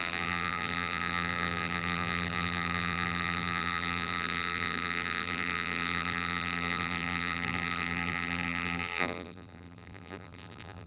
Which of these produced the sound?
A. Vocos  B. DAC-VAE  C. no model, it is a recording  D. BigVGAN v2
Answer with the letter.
D